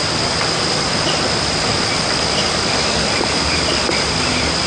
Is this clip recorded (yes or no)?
yes